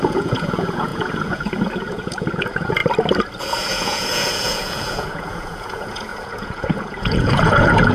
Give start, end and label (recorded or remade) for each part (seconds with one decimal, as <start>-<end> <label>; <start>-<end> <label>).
0.0-2.8 remade; 2.8-3.4 recorded; 3.4-7.9 remade